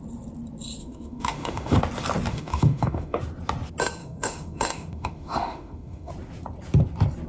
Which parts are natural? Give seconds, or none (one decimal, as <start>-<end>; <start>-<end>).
0.0-0.8; 1.8-2.3; 3.2-4.0; 6.1-7.3